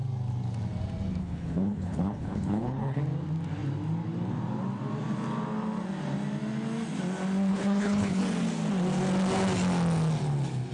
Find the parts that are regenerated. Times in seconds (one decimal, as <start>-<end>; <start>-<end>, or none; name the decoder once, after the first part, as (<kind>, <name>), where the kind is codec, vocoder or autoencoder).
1.2-3.0 (codec, HILCodec); 7.5-8.2